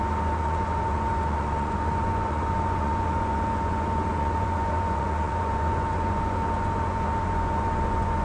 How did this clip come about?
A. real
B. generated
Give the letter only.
B